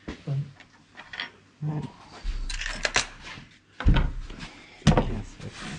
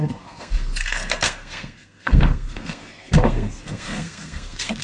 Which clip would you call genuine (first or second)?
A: first